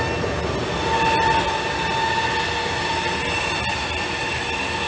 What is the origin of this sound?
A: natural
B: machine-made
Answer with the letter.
A